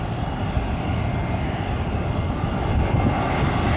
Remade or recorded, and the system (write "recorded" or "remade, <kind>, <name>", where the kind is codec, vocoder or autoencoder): recorded